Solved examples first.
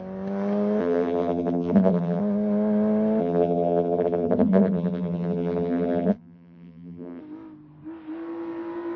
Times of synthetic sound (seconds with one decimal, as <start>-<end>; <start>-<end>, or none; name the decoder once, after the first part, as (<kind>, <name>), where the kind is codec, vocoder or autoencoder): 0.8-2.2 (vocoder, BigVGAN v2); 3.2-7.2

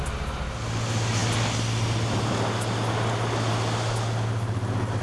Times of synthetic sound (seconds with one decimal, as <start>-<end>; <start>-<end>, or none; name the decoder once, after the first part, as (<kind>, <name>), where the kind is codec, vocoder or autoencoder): none

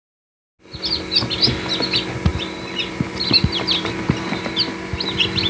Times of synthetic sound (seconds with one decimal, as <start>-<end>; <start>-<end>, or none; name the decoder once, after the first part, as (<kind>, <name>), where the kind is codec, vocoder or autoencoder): 2.3-4.4 (vocoder, BigVGAN v2)

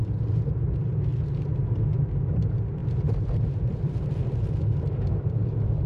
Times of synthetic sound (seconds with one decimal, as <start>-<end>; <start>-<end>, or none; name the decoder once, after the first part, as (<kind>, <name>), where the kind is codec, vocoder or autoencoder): 2.8-4.5 (vocoder, BigVGAN v2)

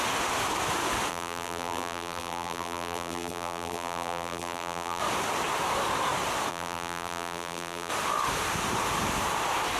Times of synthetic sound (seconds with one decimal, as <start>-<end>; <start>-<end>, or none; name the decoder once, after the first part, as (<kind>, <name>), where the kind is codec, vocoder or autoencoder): 1.1-5.0 (vocoder, BigVGAN v2); 6.5-7.9

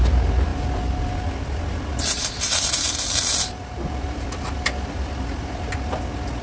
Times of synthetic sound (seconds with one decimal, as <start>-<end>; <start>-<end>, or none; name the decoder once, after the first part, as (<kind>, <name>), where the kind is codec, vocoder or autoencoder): 0.5-1.1 (vocoder, BigVGAN v2); 1.9-5.7

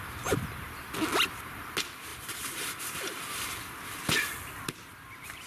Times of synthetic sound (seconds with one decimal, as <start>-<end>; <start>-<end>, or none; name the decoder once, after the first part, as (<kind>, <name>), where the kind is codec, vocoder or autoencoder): 2.1-3.4 (vocoder, BigVGAN v2)

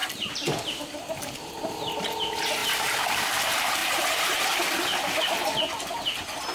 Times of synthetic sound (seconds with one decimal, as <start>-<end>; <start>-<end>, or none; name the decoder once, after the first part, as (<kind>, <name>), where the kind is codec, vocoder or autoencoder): 0.0-1.6 (vocoder, BigVGAN v2); 2.6-3.4; 3.8-4.6